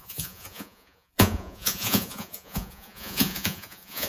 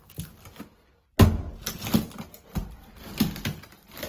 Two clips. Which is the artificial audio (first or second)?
first